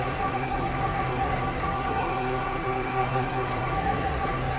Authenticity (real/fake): fake